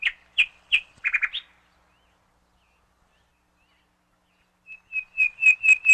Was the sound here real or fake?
real